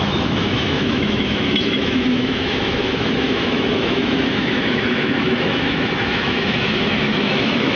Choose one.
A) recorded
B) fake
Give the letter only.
B